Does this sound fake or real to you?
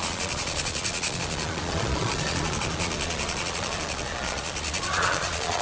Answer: fake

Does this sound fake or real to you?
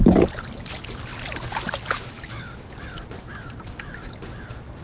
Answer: real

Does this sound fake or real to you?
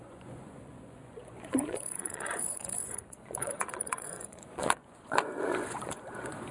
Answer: fake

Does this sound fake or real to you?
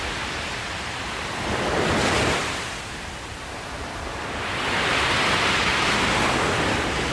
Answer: real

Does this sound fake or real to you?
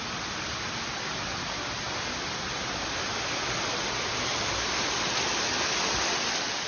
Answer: real